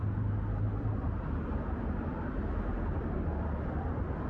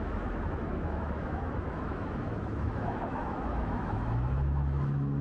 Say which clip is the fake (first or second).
second